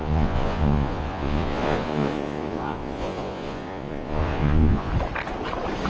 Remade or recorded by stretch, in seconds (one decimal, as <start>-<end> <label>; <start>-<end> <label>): 0.0-4.9 remade; 4.9-5.9 recorded